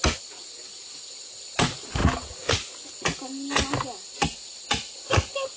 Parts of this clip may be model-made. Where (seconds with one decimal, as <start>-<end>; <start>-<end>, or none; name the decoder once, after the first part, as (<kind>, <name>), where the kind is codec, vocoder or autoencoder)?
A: none